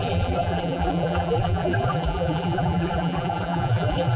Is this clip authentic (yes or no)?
no